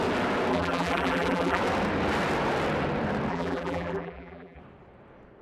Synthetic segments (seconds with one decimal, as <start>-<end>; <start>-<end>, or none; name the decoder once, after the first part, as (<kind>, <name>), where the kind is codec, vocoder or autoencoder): 0.5-1.6 (vocoder, BigVGAN v2); 3.3-4.6